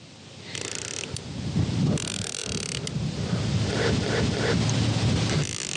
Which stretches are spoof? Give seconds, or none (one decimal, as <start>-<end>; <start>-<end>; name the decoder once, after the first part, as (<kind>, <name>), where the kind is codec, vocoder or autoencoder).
none